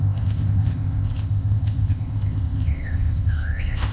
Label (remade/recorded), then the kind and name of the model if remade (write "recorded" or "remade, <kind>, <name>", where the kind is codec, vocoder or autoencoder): remade, codec, ZipCodec